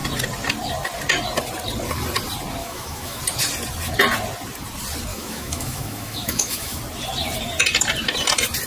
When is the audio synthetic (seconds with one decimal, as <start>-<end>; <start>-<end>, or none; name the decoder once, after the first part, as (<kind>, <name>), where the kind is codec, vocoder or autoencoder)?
2.6-3.2 (autoencoder, DAC-VAE); 5.1-6.8